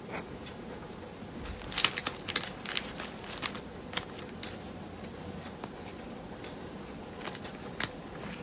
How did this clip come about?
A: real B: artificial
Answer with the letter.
A